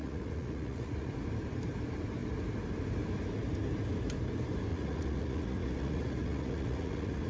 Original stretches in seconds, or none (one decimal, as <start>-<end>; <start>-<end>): 1.1-4.7